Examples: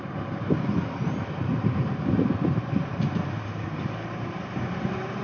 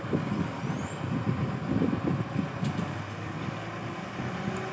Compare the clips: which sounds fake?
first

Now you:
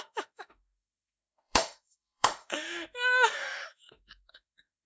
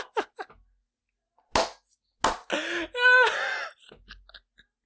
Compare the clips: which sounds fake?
first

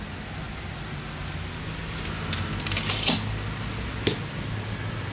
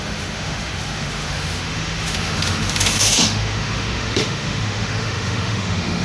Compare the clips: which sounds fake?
second